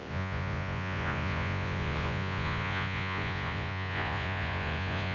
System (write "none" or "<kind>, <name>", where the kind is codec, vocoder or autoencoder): vocoder, Vocos